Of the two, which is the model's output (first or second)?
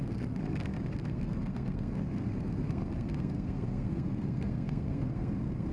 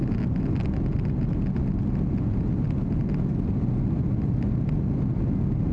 first